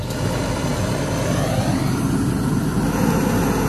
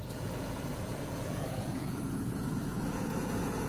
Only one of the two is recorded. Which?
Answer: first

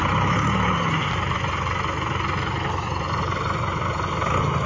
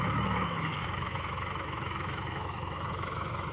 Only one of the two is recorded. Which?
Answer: first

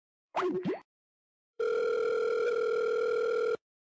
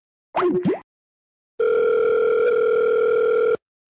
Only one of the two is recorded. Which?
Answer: second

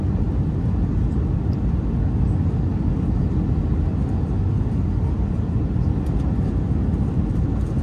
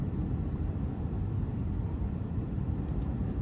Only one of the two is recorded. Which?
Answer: first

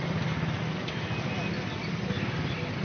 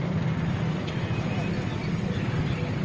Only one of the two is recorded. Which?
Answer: first